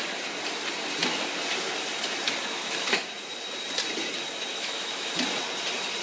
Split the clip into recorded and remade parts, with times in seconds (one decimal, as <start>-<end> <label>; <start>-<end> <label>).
0.0-2.5 recorded; 2.5-3.0 remade; 3.0-4.5 recorded; 4.5-5.1 remade; 5.1-6.0 recorded